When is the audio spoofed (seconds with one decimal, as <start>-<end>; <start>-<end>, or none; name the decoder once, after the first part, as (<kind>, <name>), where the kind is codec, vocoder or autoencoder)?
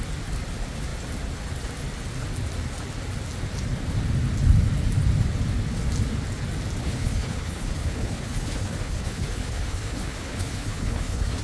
6.8-11.4 (codec, HILCodec)